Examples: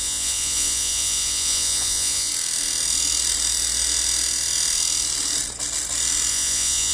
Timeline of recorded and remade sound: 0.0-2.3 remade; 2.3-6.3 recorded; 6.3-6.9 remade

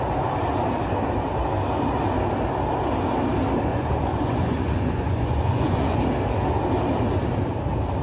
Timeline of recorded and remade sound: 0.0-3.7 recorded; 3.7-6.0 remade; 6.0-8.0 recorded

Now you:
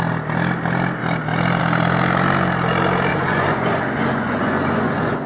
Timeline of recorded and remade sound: 0.0-3.1 recorded; 3.1-5.3 remade

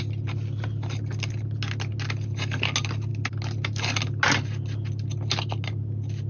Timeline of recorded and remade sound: 0.0-6.3 recorded

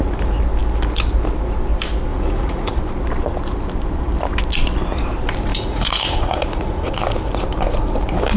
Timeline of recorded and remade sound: 0.0-2.1 recorded; 2.1-2.8 remade; 2.8-5.5 recorded; 5.5-6.9 remade; 6.9-8.4 recorded

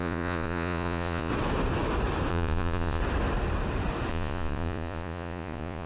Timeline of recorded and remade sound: 0.0-1.3 remade; 1.3-2.3 recorded; 2.3-3.0 remade; 3.0-4.1 recorded; 4.1-5.9 remade

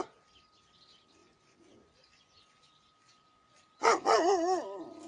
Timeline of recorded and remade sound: 0.0-1.2 recorded; 1.2-4.3 remade; 4.3-5.1 recorded

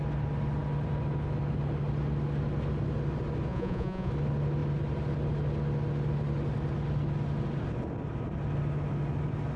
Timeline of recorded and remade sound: 0.0-3.5 recorded; 3.5-4.1 remade; 4.1-9.6 recorded